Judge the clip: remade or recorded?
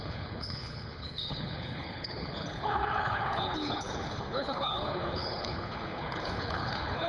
remade